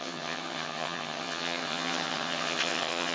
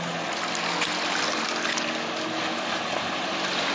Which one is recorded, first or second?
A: second